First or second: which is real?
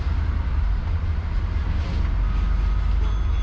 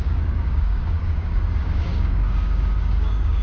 first